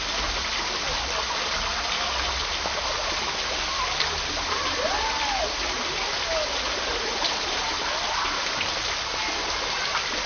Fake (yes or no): no